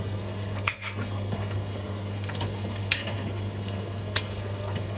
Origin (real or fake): fake